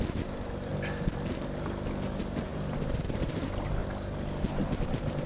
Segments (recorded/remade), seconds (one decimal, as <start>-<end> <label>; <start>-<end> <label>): 0.0-0.7 remade; 0.7-2.1 recorded; 2.1-3.8 remade; 3.8-4.8 recorded; 4.8-5.3 remade